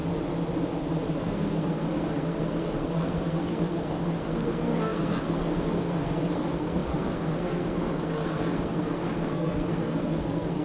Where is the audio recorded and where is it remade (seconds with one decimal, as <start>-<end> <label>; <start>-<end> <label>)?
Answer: 0.0-1.1 recorded; 1.1-10.6 remade

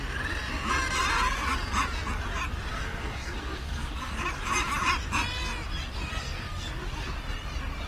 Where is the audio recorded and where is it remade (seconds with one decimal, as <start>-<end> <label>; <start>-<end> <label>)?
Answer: 0.0-2.7 recorded; 2.7-4.1 remade; 4.1-6.1 recorded; 6.1-6.7 remade; 6.7-7.9 recorded